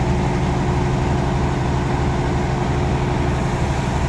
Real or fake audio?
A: real